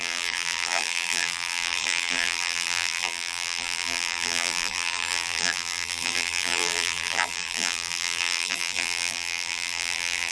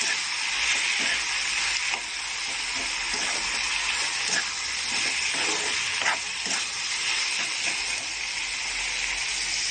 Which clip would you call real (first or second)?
second